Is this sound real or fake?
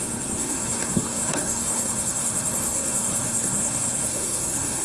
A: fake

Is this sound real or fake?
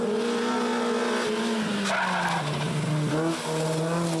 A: real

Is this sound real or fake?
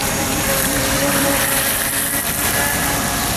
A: real